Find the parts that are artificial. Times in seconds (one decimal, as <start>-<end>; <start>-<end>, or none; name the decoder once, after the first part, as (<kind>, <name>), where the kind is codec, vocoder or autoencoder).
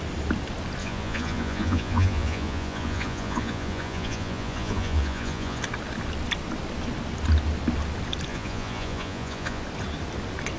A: 0.8-5.6 (vocoder, Vocos); 8.3-9.6